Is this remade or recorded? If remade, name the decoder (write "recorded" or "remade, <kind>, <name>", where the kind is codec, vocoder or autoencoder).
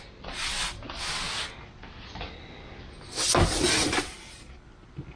recorded